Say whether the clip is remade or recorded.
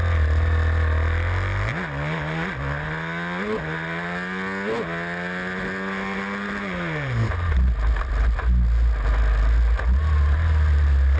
recorded